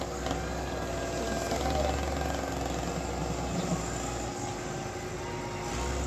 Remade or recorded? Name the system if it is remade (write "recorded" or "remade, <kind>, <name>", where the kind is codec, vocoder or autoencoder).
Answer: recorded